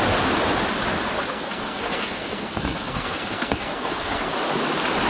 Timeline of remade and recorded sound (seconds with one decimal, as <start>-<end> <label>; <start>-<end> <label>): 0.0-1.3 recorded; 1.3-4.3 remade; 4.3-5.1 recorded

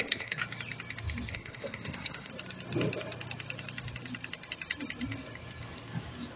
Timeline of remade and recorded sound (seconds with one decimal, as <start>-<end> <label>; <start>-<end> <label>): 0.0-0.4 remade; 0.4-1.3 recorded; 1.3-2.3 remade; 2.3-6.4 recorded

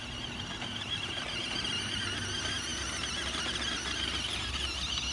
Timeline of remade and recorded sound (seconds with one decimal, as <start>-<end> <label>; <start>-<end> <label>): 0.0-5.1 recorded